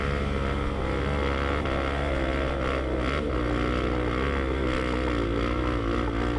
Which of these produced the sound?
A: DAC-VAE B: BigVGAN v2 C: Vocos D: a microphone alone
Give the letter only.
D